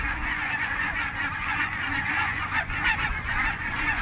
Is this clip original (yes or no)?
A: no